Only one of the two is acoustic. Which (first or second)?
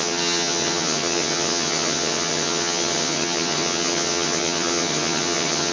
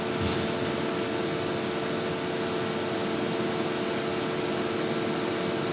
second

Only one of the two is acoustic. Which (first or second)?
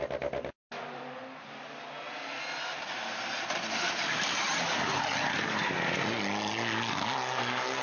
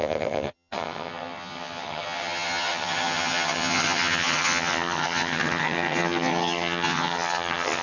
first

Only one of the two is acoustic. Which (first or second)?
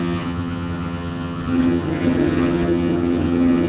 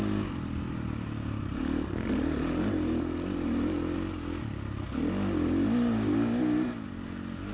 second